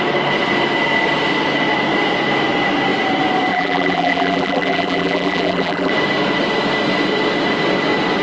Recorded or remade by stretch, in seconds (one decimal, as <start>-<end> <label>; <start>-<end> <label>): 0.0-3.5 recorded; 3.5-5.9 remade; 5.9-8.2 recorded